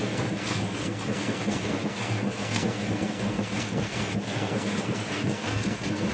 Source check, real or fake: fake